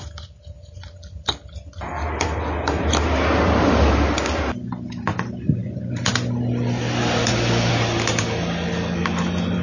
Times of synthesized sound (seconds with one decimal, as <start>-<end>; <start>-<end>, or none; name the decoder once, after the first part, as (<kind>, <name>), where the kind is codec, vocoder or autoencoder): none